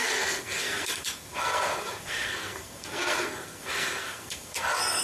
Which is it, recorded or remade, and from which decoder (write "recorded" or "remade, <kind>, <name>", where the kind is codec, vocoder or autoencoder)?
remade, codec, SNAC